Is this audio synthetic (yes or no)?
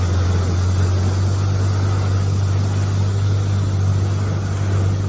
no